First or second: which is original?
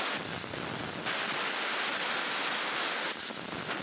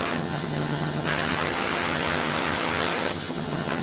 first